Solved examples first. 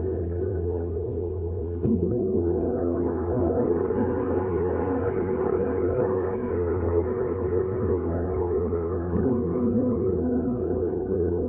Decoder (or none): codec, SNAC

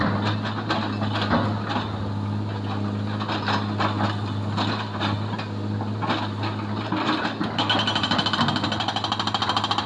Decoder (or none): none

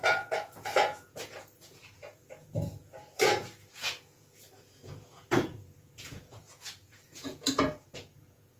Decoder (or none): vocoder, Vocos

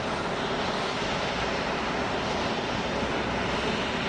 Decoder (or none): vocoder, BigVGAN v2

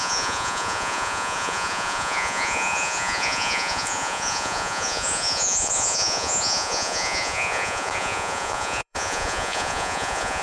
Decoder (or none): vocoder, Vocos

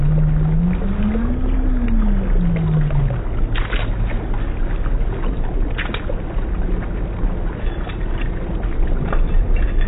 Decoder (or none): none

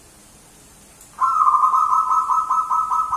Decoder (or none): none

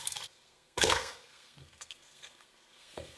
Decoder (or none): codec, SNAC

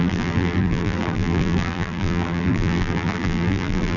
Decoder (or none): vocoder, BigVGAN v2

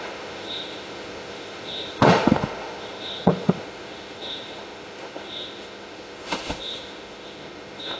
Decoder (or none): autoencoder, DAC-VAE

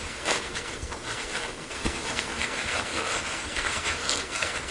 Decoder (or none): codec, SNAC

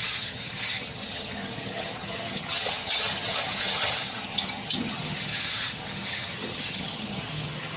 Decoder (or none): vocoder, HiFi-GAN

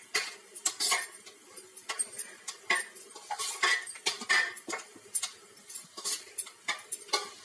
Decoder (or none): none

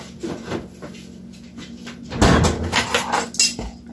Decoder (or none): none